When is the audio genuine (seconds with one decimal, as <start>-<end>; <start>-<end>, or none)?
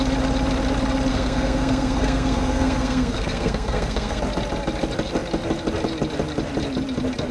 0.0-1.1; 4.2-7.3